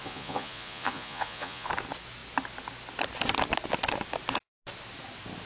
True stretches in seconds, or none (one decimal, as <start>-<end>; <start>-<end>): 1.7-5.5